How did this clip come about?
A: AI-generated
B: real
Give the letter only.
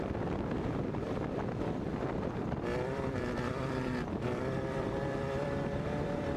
A